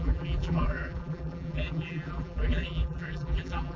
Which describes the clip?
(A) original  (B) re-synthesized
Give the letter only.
B